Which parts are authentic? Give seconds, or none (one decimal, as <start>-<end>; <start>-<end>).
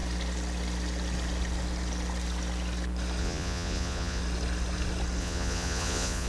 0.0-3.2; 4.2-5.2